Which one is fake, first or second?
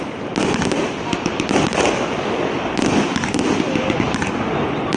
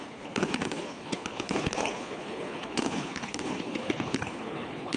second